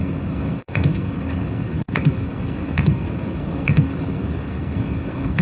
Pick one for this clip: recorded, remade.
remade